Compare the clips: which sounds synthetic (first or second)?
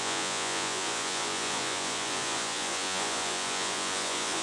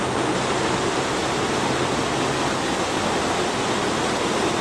first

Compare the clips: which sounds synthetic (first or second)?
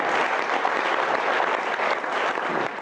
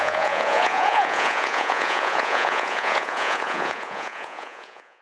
second